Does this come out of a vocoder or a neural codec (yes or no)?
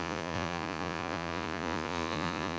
yes